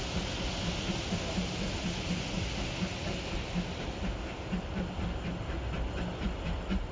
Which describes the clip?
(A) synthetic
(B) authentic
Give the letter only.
B